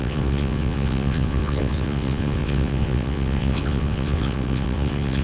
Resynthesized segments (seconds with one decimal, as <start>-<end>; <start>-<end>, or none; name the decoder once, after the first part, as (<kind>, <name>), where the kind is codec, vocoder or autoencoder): 0.0-5.2 (vocoder, WaveNeXt)